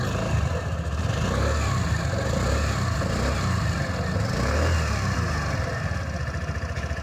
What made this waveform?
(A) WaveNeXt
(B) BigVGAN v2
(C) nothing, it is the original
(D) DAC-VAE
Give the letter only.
C